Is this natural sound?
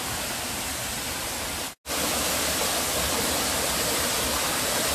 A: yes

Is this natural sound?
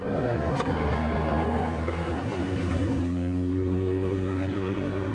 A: no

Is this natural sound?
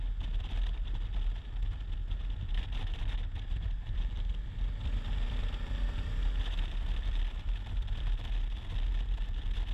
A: yes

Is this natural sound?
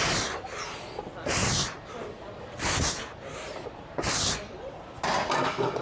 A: yes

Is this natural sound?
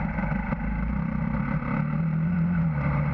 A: yes